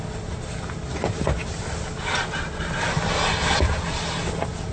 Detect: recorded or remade recorded